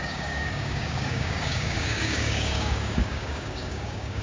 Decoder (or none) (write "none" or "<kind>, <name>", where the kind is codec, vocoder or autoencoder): codec, DAC